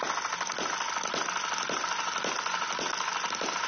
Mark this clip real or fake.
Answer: real